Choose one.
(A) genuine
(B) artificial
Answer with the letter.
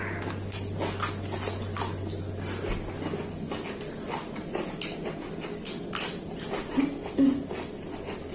A